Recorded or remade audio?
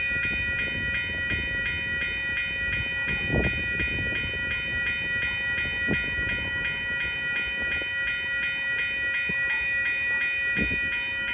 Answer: recorded